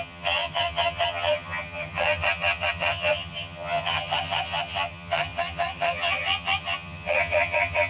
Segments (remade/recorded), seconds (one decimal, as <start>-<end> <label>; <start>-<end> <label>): 0.0-7.9 remade

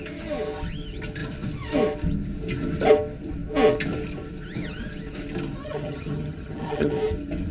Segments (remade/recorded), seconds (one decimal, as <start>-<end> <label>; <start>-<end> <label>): 0.0-5.6 recorded; 5.6-6.9 remade; 6.9-7.5 recorded

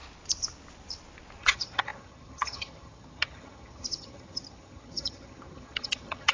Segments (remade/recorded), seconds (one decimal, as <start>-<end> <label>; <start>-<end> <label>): 0.0-1.4 recorded; 1.4-6.3 remade

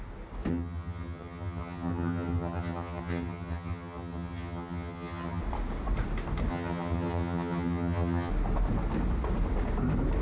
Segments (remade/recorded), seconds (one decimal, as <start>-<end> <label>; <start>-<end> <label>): 0.0-0.5 recorded; 0.5-5.4 remade; 5.4-6.5 recorded; 6.5-8.3 remade; 8.3-10.2 recorded